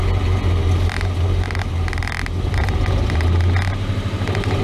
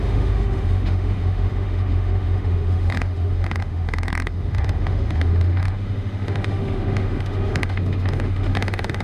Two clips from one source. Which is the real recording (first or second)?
first